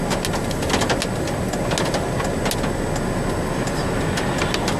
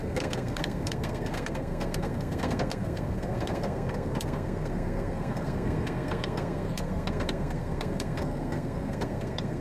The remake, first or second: second